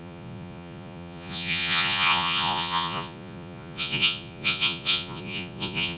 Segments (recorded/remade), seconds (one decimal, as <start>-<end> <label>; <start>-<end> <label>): 0.0-6.0 remade